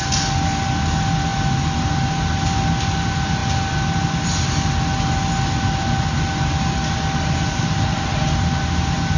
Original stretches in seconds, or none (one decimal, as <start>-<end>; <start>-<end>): 0.0-9.2